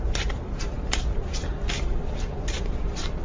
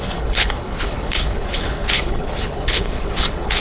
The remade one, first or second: second